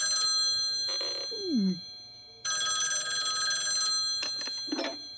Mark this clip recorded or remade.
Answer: recorded